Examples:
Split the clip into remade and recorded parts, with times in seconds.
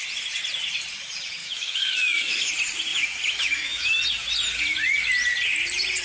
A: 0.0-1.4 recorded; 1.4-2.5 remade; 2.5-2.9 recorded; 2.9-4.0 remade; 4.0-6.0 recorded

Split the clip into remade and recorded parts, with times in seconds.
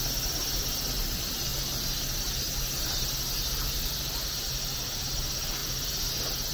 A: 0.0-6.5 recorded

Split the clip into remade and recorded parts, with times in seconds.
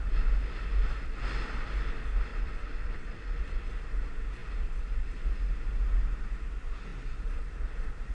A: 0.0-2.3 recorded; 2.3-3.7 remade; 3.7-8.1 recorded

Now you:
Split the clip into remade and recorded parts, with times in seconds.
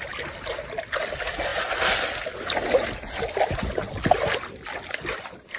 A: 0.0-5.6 recorded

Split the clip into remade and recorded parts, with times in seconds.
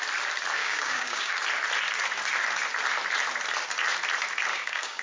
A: 0.0-0.6 recorded; 0.6-1.3 remade; 1.3-4.5 recorded; 4.5-5.0 remade